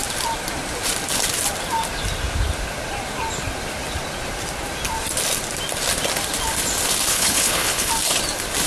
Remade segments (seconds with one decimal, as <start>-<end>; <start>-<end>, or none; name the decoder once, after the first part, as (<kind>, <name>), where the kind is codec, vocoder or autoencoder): 7.1-7.9 (codec, HILCodec)